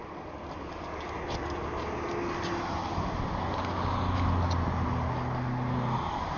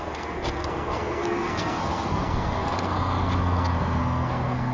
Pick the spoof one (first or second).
second